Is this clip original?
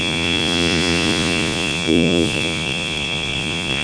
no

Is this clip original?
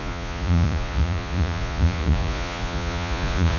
no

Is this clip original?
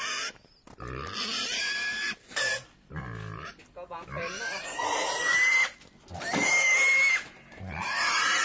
yes